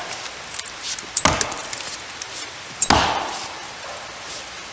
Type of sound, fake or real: real